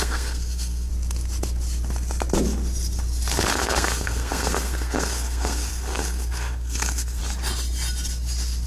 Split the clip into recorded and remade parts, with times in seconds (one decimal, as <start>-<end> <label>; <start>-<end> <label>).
0.0-0.9 remade; 0.9-3.5 recorded; 3.5-7.2 remade; 7.2-8.7 recorded